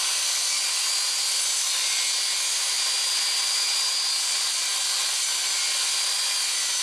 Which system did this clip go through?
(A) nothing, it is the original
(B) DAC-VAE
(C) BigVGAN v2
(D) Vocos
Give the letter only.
A